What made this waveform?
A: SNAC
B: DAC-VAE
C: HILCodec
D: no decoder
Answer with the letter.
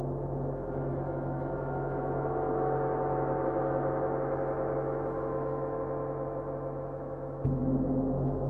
B